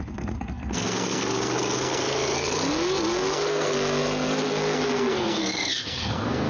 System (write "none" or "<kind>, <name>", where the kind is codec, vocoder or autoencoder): codec, SNAC